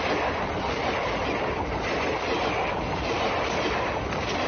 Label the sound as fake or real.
real